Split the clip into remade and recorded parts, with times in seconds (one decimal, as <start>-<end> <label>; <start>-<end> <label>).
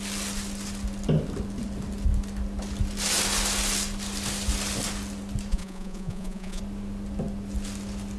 0.0-5.5 recorded; 5.5-6.6 remade; 6.6-8.2 recorded